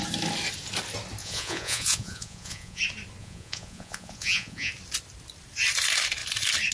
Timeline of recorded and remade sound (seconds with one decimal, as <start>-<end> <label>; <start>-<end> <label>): 0.0-1.2 recorded; 1.2-2.8 remade; 2.8-3.2 recorded; 3.2-4.7 remade; 4.7-6.7 recorded

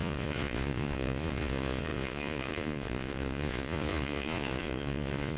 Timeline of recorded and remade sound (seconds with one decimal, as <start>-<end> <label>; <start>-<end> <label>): 0.0-5.4 remade

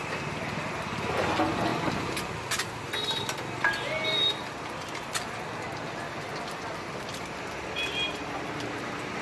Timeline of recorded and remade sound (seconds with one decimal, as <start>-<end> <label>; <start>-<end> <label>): 0.0-9.2 recorded

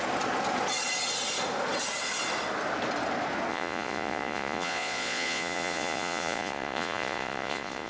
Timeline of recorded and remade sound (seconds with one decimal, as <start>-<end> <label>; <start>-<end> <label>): 0.0-3.5 recorded; 3.5-7.9 remade

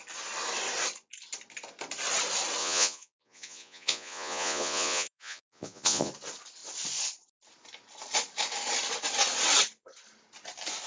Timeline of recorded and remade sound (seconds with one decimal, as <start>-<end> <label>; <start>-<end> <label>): 0.0-2.6 recorded; 2.6-6.1 remade; 6.1-10.9 recorded

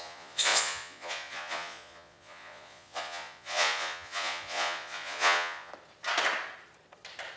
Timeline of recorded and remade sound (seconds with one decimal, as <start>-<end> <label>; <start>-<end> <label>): 0.0-5.7 remade; 5.7-7.4 recorded